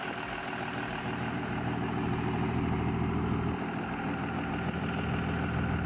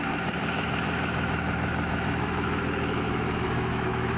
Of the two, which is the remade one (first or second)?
second